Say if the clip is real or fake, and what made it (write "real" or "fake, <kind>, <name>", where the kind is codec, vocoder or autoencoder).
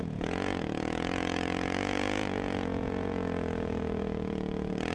fake, vocoder, Vocos